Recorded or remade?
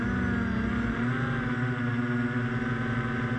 recorded